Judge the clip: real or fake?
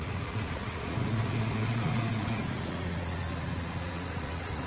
fake